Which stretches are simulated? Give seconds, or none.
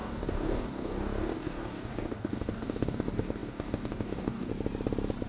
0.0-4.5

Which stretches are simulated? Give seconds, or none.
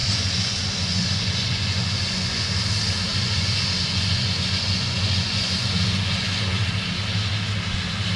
0.0-2.6; 3.1-6.6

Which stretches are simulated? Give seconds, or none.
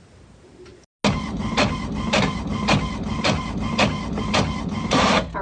none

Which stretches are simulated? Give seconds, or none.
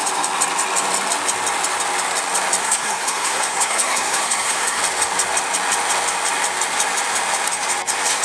2.6-4.8